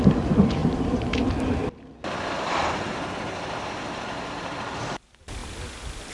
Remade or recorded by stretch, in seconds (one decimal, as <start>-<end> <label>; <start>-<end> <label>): 0.0-0.6 recorded; 0.6-1.2 remade; 1.2-6.1 recorded